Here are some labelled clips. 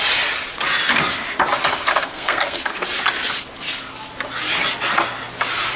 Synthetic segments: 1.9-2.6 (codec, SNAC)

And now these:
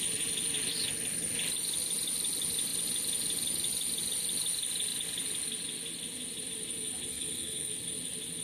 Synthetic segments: 7.1-7.7 (codec, SNAC)

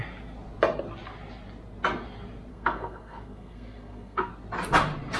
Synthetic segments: 2.5-4.3 (codec, SNAC)

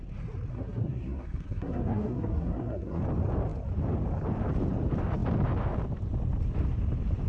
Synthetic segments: 0.5-3.0 (codec, SNAC)

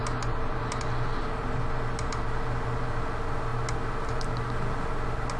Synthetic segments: none